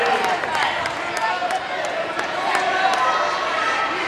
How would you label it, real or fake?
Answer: fake